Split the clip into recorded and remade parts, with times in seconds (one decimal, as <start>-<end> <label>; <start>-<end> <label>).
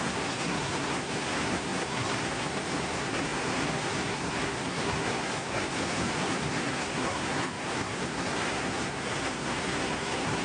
0.0-10.4 remade